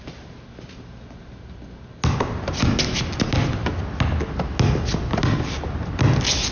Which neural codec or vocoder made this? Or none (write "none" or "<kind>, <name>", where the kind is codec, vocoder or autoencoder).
none